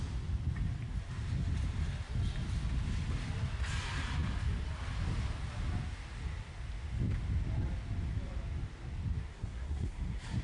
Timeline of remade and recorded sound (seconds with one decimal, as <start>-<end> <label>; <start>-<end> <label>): 0.0-9.3 recorded; 9.3-10.4 remade